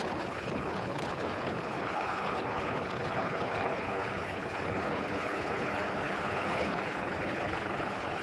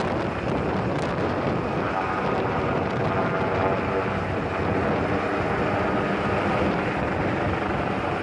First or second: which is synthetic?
first